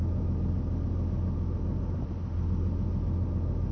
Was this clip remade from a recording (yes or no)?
no